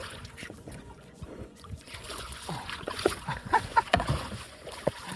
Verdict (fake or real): fake